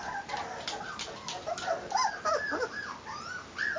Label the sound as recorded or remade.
recorded